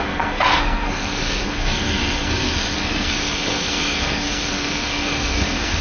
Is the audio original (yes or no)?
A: no